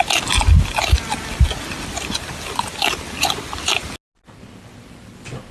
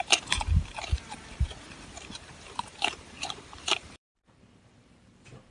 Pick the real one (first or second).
first